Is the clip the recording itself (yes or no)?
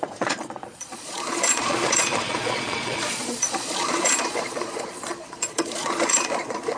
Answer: no